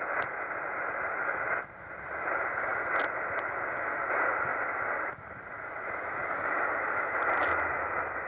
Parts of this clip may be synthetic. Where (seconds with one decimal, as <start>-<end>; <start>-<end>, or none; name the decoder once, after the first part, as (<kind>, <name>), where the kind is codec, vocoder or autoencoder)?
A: none